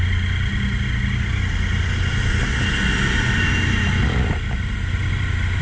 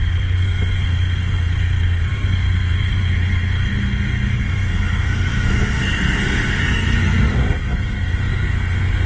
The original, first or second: first